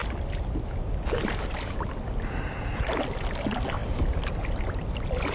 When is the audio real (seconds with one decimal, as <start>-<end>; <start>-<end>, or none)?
0.0-5.3